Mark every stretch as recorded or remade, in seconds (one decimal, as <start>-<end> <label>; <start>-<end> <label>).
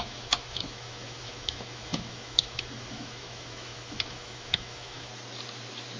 0.0-5.1 remade; 5.1-6.0 recorded